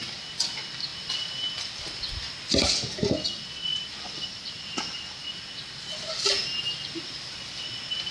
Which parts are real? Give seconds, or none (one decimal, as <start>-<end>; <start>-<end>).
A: 0.0-3.7; 5.2-8.1